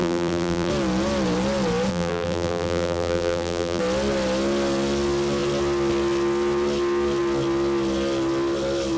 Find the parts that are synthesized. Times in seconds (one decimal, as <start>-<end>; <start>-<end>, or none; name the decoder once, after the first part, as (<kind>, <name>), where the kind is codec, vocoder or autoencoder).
0.0-0.7 (vocoder, BigVGAN v2); 1.9-3.8